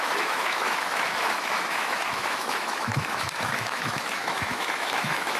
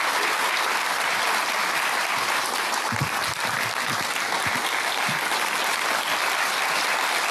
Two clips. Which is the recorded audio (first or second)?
second